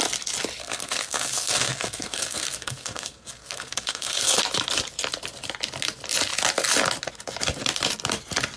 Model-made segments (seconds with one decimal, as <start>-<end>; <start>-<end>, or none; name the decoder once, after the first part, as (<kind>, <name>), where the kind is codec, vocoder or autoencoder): 0.6-4.4 (codec, SNAC)